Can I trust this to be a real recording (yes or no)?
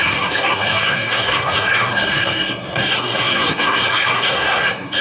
no